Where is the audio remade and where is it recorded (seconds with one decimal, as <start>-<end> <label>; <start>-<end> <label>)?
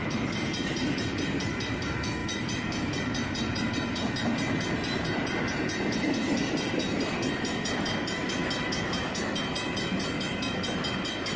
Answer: 0.0-8.2 remade; 8.2-9.4 recorded; 9.4-11.4 remade